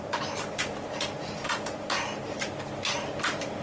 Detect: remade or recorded recorded